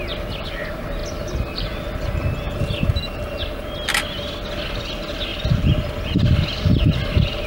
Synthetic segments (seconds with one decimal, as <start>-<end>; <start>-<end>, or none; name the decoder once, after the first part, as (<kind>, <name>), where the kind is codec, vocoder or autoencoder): none